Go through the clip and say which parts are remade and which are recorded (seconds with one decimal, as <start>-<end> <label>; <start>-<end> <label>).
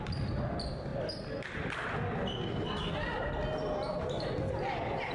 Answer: 0.0-5.1 recorded